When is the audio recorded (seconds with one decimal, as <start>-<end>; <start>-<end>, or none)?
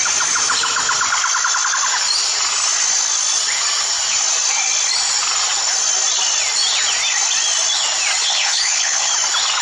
0.0-8.2; 9.1-9.6